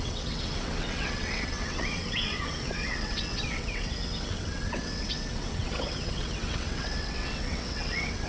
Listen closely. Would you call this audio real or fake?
fake